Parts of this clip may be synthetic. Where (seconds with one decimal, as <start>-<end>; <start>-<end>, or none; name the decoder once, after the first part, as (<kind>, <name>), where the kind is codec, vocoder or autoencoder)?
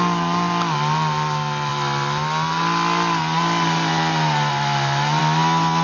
none